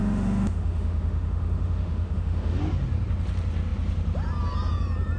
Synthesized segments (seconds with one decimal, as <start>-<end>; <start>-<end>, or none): 0.0-2.6